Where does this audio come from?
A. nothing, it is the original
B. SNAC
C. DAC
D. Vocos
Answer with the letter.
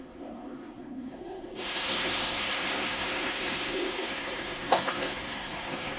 B